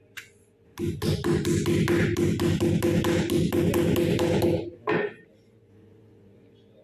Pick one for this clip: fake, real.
real